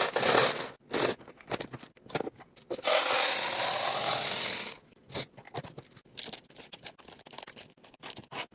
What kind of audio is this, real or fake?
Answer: real